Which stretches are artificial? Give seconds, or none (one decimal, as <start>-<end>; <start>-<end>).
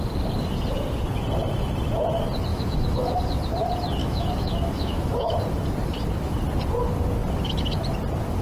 2.5-3.2; 4.0-5.4